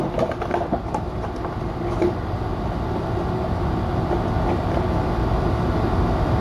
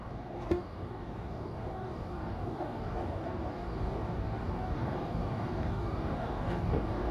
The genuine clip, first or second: first